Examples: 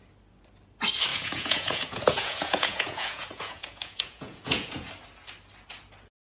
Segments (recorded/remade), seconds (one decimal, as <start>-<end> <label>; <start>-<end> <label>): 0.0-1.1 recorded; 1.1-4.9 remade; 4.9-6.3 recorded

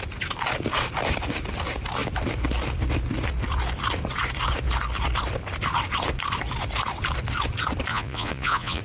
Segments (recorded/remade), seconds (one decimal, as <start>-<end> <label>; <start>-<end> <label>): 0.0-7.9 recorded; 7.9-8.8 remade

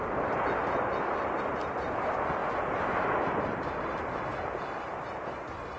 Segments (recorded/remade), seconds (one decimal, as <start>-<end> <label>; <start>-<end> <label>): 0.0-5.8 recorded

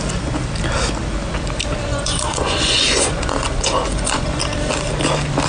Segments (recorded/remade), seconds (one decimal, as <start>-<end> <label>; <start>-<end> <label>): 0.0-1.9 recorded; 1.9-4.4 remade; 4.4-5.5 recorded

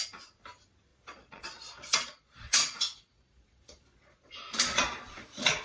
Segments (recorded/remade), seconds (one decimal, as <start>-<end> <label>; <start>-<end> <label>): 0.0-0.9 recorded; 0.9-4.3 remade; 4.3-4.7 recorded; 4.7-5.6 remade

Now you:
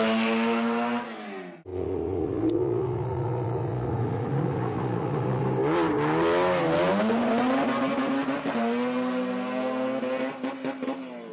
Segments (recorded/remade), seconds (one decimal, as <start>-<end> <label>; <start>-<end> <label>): 0.0-1.7 recorded; 1.7-5.4 remade; 5.4-11.3 recorded

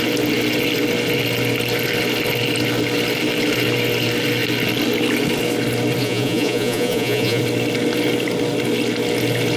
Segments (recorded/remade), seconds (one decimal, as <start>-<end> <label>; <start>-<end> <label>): 0.0-6.0 recorded; 6.0-7.4 remade; 7.4-9.6 recorded

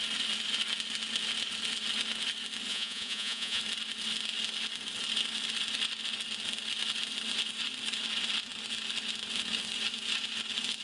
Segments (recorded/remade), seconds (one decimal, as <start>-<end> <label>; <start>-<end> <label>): 0.0-2.7 recorded; 2.7-3.6 remade; 3.6-10.8 recorded